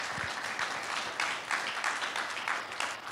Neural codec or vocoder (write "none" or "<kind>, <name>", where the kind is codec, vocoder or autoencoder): none